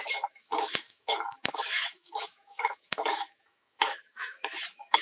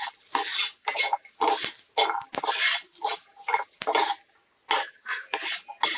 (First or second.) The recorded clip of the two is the second